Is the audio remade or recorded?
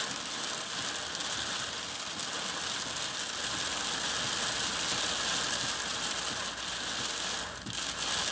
recorded